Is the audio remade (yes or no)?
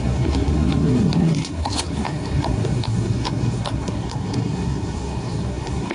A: yes